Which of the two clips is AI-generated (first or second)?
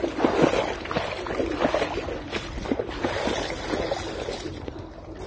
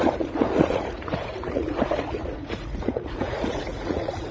second